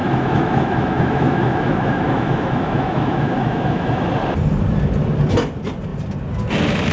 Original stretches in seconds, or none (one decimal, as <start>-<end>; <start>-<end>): 4.1-6.9